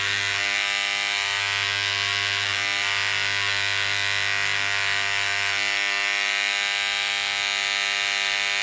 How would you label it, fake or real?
real